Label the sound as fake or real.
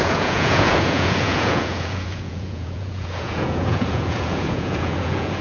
fake